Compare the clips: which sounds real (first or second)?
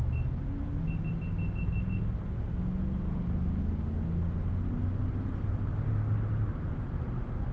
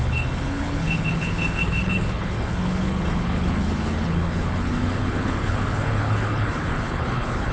first